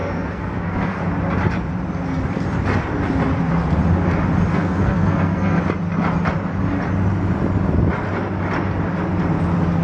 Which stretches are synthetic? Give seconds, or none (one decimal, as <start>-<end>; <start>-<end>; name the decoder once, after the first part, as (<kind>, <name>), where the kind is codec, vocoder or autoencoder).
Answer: 0.0-1.0 (codec, SNAC); 4.5-5.6